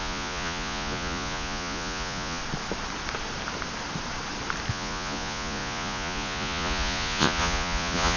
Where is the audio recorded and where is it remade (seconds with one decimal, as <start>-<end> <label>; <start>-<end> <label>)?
0.0-2.4 remade; 2.4-4.7 recorded; 4.7-8.2 remade